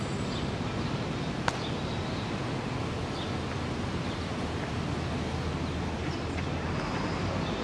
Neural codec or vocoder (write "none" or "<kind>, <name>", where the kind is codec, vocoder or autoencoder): none